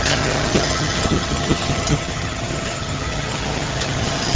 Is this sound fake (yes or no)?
yes